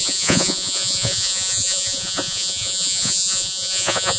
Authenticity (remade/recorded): remade